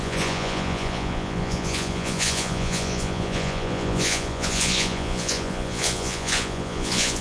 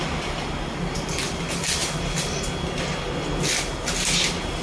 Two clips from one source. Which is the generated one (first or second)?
first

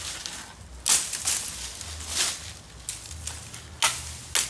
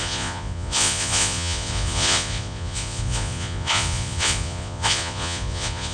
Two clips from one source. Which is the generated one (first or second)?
second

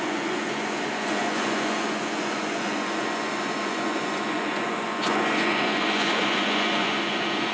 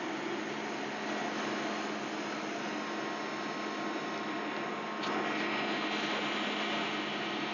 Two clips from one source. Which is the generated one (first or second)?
first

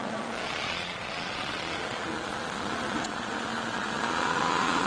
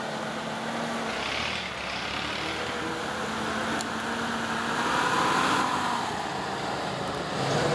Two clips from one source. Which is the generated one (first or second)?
first